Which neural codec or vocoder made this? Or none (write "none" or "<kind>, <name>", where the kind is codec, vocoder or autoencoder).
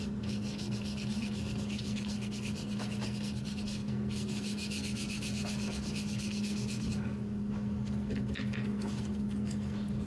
codec, SNAC